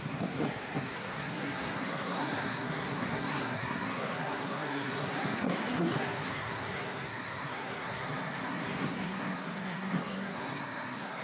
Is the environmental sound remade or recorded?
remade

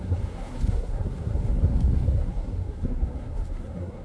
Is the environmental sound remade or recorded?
remade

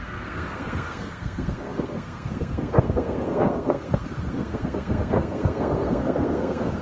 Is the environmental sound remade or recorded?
remade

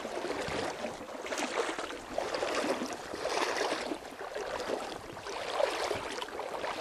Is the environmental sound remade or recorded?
recorded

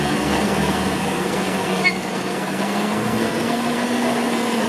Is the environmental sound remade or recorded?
remade